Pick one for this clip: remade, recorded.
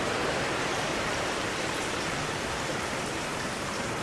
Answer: remade